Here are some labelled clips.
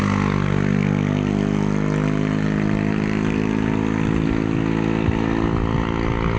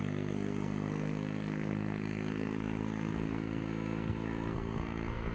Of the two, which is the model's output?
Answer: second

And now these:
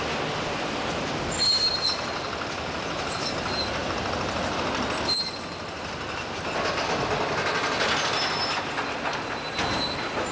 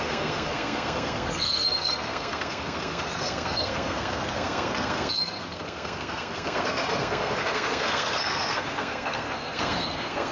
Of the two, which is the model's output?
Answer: second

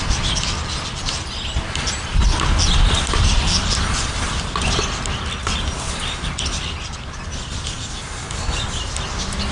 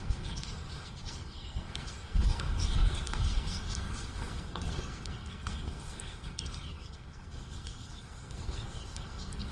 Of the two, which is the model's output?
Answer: second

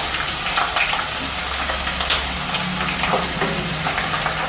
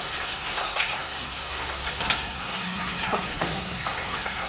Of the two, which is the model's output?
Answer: second